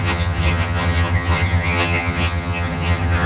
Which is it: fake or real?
fake